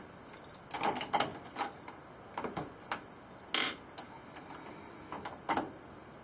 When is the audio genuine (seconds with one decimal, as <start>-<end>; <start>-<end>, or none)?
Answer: 0.0-6.2